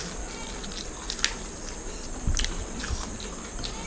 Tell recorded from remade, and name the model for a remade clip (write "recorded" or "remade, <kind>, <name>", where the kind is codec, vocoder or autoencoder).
recorded